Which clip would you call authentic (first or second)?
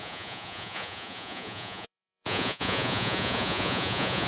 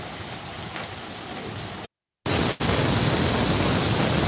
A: second